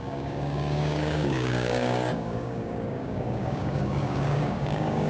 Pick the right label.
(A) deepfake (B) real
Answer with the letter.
A